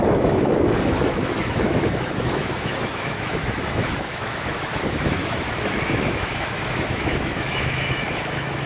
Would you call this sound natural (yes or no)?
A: no